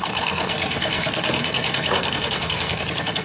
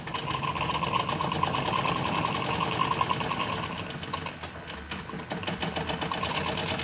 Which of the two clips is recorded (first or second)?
second